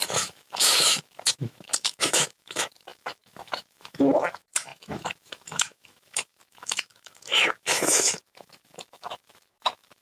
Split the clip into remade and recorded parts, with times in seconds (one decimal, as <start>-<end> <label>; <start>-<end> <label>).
0.0-10.0 remade